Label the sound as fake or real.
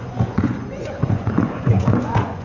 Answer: fake